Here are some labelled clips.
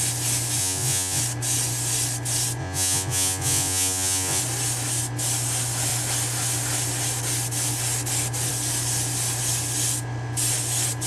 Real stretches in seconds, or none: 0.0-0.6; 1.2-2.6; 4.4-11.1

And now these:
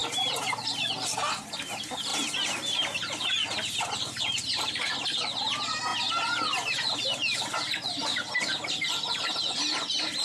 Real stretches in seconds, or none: 0.0-10.2